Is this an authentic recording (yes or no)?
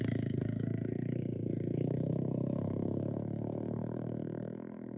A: no